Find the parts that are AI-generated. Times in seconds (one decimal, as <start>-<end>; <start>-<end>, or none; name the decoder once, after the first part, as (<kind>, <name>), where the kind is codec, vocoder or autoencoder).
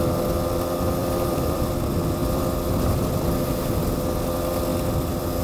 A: 1.0-1.7 (vocoder, BigVGAN v2); 4.7-5.4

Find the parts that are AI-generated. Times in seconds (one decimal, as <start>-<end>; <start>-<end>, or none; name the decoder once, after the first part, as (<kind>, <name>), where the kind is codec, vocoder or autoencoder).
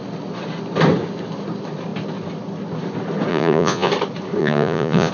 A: 3.3-3.9 (vocoder, Vocos); 4.4-5.1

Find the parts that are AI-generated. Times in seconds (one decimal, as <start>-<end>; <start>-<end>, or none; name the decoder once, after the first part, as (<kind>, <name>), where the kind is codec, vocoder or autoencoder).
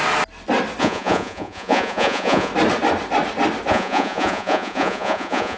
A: 0.8-2.5 (vocoder, Vocos); 3.7-5.6